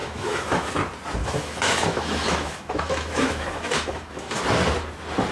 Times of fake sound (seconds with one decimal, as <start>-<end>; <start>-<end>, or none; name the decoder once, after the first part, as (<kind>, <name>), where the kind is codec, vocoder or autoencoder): 0.0-0.7 (autoencoder, DAC-VAE); 1.2-4.4